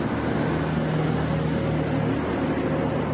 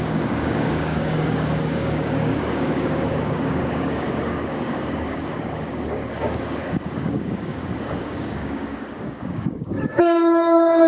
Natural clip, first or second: first